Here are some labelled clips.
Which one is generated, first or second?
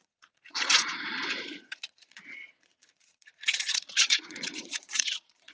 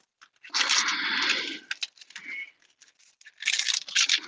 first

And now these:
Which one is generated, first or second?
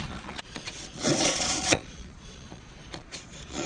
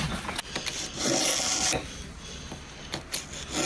first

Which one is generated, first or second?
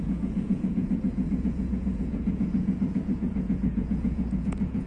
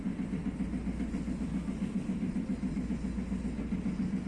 first